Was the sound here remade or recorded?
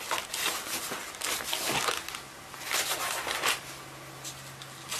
recorded